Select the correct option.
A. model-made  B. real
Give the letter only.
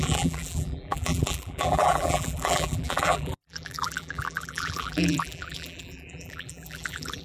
A